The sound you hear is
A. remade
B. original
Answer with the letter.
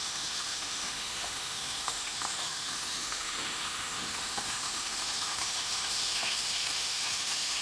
A